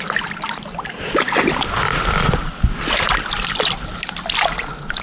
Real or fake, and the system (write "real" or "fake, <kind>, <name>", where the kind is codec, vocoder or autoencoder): real